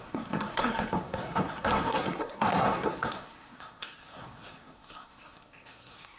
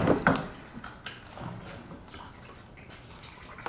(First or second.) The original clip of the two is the second